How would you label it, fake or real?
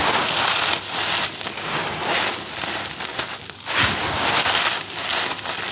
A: real